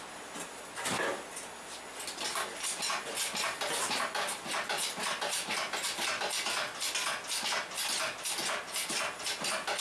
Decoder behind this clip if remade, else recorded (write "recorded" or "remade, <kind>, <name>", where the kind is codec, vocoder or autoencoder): recorded